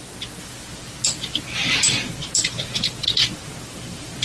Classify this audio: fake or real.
real